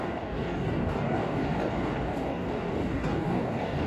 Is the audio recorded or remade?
remade